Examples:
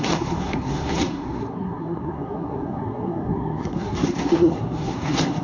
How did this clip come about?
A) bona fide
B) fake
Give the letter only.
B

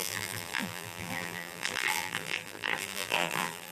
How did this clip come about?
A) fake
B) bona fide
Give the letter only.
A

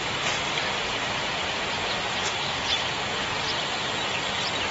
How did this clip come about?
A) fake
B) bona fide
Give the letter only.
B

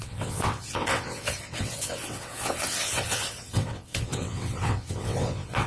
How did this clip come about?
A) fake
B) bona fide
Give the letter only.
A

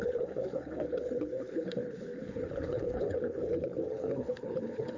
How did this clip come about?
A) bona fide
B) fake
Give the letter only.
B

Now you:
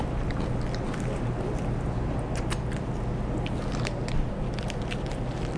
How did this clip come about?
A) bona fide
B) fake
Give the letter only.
A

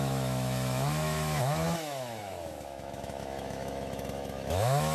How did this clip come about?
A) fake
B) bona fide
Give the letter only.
A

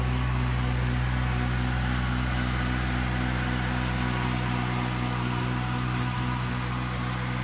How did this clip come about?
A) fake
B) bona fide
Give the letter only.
B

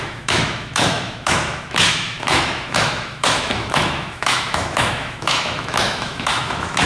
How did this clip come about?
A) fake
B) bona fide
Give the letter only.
A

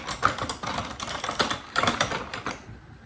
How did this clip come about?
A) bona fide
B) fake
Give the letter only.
A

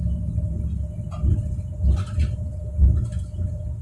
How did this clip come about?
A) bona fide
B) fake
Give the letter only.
A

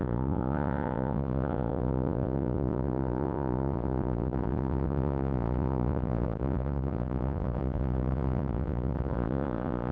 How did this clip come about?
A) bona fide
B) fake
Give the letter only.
B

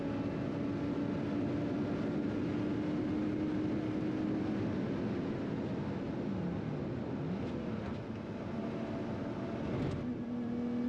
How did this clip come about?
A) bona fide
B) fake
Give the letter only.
A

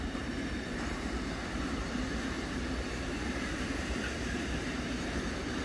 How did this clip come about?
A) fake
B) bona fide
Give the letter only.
A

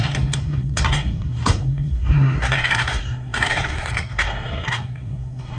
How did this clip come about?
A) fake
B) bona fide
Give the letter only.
A